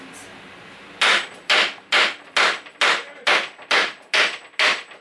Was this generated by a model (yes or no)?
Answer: no